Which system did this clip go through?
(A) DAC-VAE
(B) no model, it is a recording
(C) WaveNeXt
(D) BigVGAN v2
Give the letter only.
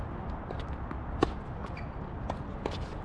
B